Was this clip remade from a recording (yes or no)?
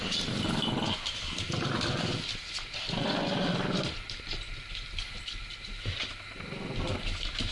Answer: no